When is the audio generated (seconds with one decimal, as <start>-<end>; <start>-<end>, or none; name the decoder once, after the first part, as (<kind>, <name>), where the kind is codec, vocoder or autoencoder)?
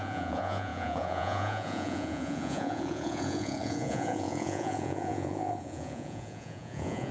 0.0-7.1 (vocoder, Vocos)